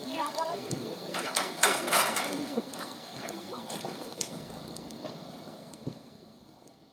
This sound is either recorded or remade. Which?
remade